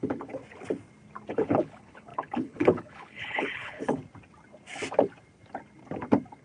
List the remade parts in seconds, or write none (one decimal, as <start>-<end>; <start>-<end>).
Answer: 0.0-0.4; 1.3-4.0